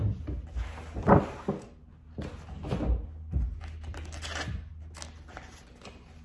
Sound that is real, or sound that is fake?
real